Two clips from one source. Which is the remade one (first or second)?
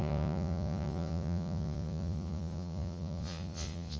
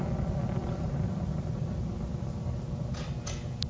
first